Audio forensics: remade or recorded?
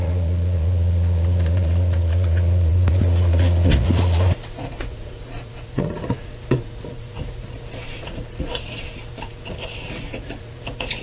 remade